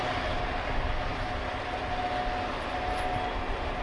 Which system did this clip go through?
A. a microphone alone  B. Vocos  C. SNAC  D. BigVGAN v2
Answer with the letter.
A